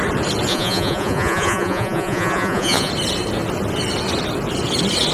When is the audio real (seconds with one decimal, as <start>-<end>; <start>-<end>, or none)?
0.0-0.5; 2.9-5.1